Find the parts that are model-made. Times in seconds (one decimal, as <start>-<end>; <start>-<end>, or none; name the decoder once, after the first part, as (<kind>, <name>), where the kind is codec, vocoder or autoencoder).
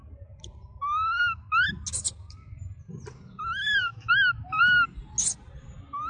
3.9-4.6 (autoencoder, DAC-VAE)